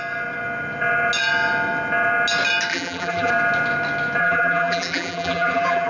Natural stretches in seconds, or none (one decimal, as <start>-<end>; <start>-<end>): 0.0-2.7; 3.3-4.2

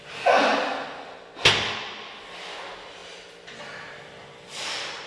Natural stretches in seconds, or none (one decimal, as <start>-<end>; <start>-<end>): 0.0-5.1

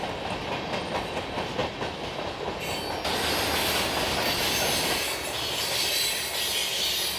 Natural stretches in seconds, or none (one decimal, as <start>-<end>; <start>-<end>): 0.0-7.2